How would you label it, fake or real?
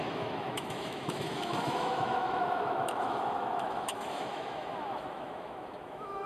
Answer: fake